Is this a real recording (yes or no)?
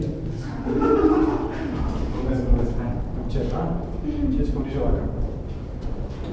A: yes